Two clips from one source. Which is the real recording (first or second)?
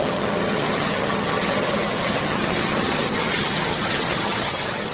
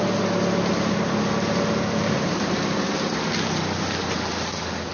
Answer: second